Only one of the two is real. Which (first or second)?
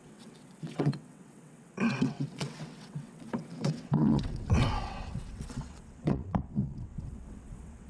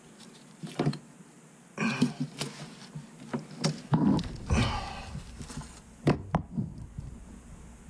second